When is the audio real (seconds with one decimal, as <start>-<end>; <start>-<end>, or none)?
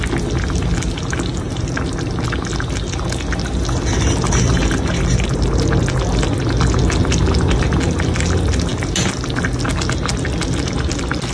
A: 0.0-11.3